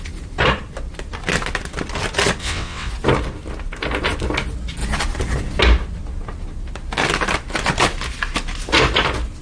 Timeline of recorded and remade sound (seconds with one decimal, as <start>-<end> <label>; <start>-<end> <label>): 0.0-2.4 recorded; 2.4-2.9 remade; 2.9-9.4 recorded